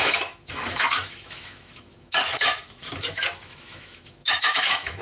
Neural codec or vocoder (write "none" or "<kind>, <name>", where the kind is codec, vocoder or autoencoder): autoencoder, DAC-VAE